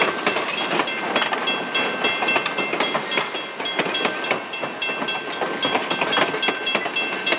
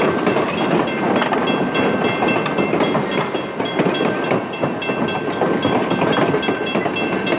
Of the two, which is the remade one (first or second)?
second